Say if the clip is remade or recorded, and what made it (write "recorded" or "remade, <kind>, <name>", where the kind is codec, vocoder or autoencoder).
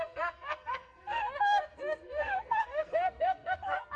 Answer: remade, codec, SNAC